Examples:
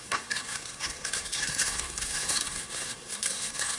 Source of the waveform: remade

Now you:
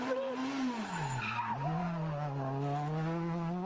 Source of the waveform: recorded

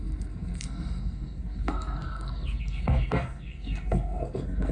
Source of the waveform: remade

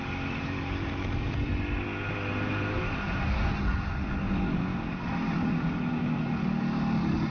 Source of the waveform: recorded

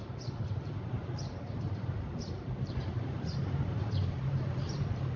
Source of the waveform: recorded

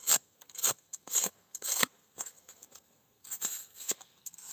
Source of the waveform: remade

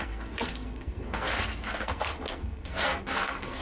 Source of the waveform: remade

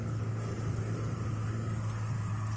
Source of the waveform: recorded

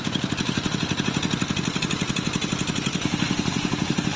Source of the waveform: recorded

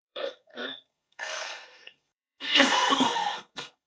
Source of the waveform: remade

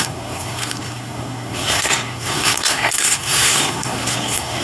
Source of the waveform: remade